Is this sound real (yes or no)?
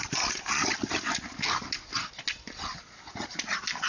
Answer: yes